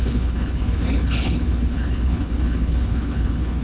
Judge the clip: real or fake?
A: fake